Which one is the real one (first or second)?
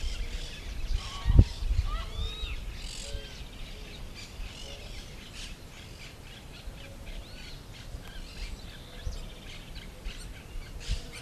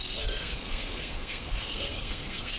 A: first